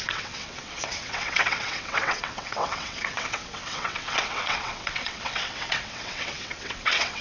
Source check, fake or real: fake